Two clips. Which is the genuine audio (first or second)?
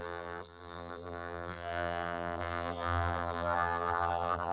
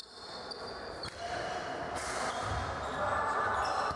second